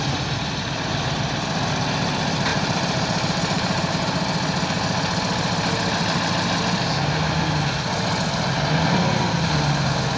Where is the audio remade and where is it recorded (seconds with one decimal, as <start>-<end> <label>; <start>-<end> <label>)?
0.0-2.5 recorded; 2.5-3.9 remade; 3.9-10.2 recorded